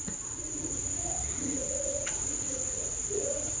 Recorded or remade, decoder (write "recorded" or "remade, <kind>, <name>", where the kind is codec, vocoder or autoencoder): remade, vocoder, Vocos